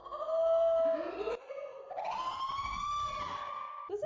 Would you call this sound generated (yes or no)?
no